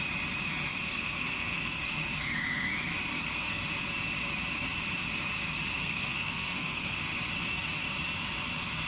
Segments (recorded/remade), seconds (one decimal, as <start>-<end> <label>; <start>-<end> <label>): 0.0-0.7 recorded; 0.7-1.8 remade; 1.8-3.1 recorded; 3.1-3.6 remade; 3.6-5.8 recorded; 5.8-7.0 remade; 7.0-8.9 recorded